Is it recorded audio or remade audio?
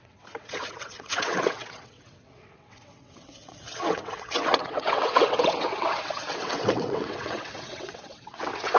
remade